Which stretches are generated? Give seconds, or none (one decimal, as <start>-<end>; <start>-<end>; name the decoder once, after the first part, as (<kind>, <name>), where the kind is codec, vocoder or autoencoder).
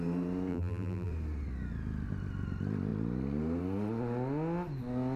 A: 0.5-1.1 (vocoder, BigVGAN v2)